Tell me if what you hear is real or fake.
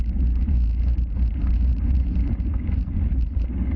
real